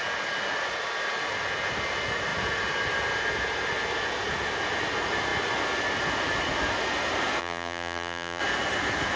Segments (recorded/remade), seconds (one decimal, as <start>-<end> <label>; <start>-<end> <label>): 0.0-7.4 recorded; 7.4-8.4 remade; 8.4-9.2 recorded

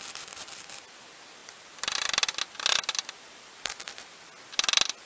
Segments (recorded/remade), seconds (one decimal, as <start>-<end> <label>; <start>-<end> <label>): 0.0-5.1 recorded

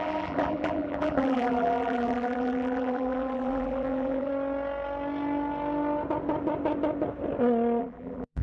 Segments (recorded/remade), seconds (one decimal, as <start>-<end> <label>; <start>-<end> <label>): 0.0-4.3 remade; 4.3-7.8 recorded; 7.8-8.4 remade

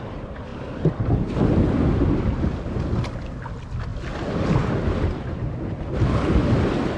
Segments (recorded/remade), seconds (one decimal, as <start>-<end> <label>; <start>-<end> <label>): 0.0-7.0 recorded

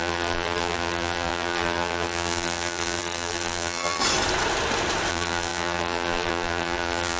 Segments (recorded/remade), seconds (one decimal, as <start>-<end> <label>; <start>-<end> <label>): 0.0-4.0 remade; 4.0-5.1 recorded; 5.1-7.2 remade

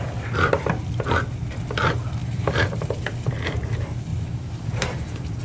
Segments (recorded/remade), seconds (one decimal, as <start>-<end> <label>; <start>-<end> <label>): 0.0-2.2 recorded; 2.2-3.1 remade; 3.1-4.1 recorded; 4.1-5.4 remade